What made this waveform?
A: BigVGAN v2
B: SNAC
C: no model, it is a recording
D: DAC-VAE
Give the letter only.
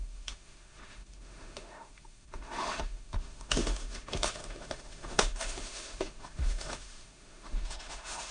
D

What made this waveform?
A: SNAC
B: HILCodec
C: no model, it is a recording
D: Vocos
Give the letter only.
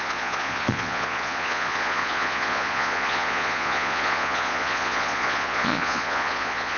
D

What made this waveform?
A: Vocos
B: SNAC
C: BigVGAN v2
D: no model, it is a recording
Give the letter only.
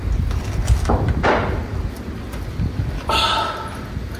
D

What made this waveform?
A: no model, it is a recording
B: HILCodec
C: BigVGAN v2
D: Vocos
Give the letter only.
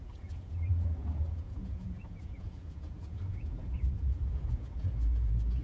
D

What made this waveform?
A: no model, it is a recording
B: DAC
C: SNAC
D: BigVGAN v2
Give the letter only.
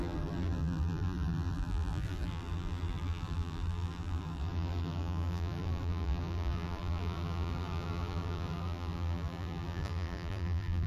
D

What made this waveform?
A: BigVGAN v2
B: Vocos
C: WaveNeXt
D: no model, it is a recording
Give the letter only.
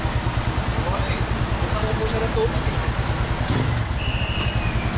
D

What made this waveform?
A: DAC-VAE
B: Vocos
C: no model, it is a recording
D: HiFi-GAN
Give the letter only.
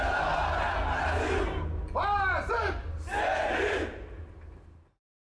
C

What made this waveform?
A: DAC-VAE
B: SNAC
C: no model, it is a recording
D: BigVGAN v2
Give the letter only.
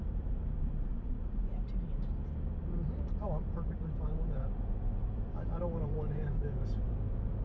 D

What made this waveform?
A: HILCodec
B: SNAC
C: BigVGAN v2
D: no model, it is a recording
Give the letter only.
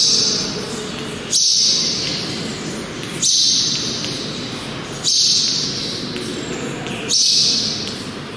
D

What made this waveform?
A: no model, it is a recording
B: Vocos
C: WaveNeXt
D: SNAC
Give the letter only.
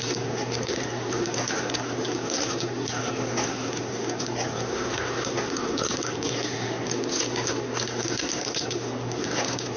D